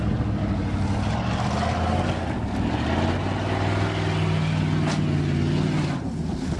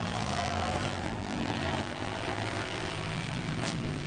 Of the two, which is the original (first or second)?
first